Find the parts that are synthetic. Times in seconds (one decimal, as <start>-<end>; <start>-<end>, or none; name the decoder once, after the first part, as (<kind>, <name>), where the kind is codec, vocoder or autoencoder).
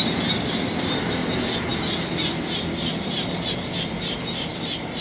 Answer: none